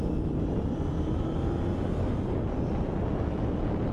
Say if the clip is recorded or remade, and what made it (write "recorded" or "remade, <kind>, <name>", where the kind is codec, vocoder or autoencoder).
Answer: recorded